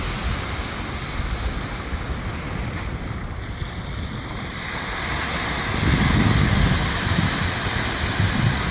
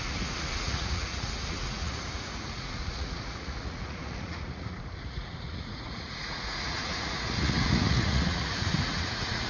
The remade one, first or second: second